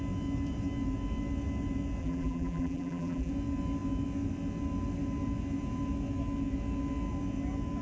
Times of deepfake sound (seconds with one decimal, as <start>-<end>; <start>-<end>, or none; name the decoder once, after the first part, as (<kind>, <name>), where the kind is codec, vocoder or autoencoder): 2.0-3.3 (vocoder, BigVGAN v2)